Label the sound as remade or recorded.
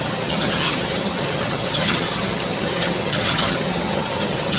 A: remade